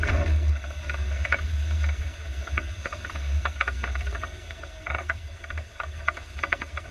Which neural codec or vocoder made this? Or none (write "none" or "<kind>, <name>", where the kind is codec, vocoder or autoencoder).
codec, SNAC